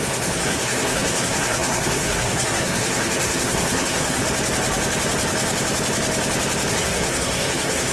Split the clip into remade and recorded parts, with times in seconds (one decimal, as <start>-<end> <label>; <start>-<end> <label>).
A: 0.0-4.2 remade; 4.2-6.7 recorded; 6.7-7.9 remade